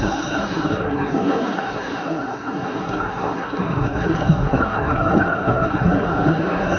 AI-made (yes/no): yes